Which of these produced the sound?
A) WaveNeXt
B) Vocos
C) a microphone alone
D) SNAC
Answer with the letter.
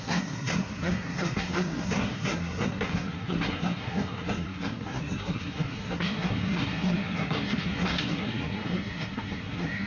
D